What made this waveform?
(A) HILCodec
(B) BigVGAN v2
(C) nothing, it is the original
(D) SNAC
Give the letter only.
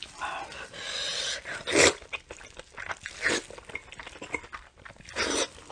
C